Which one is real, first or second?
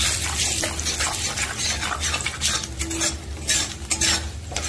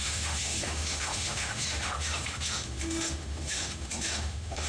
first